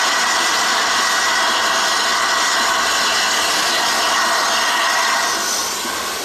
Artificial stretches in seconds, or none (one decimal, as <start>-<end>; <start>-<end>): none